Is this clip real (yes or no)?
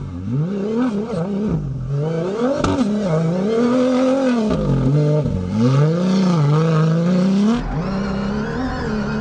yes